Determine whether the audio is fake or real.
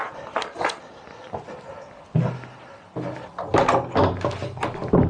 real